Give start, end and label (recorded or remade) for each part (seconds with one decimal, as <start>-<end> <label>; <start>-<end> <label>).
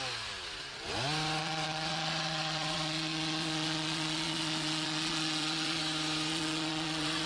0.0-1.4 recorded; 1.4-5.8 remade; 5.8-6.3 recorded; 6.3-7.3 remade